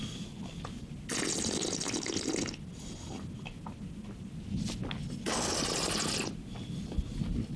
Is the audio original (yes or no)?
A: yes